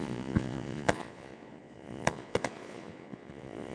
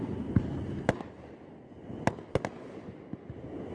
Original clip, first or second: second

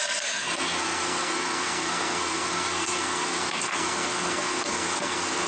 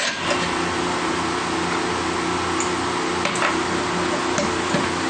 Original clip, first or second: second